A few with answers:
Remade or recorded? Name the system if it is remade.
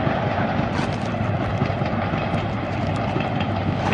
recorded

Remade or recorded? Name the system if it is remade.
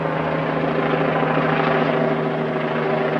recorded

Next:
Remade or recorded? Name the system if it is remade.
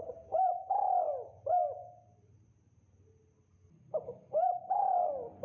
recorded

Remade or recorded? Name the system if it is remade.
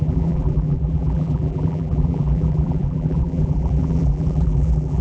remade, vocoder, BigVGAN v2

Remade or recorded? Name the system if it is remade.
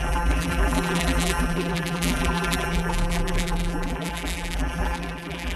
remade, vocoder, BigVGAN v2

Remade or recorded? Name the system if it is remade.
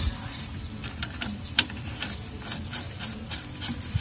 remade, vocoder, BigVGAN v2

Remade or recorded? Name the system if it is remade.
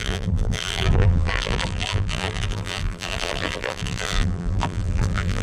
remade, vocoder, BigVGAN v2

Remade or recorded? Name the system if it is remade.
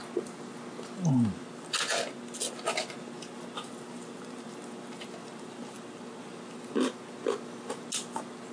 recorded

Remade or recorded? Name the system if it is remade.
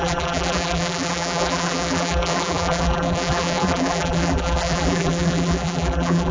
remade, vocoder, BigVGAN v2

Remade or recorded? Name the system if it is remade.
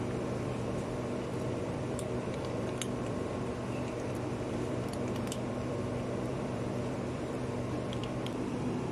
remade, vocoder, BigVGAN v2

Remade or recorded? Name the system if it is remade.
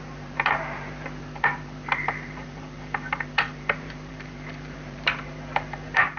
remade, vocoder, BigVGAN v2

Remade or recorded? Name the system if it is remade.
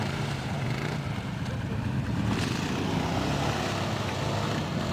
recorded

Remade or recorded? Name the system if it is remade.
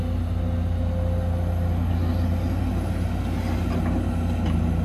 recorded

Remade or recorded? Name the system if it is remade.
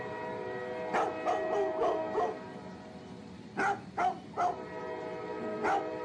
recorded